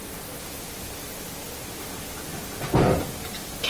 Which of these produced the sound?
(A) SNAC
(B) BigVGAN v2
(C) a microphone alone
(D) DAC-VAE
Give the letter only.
C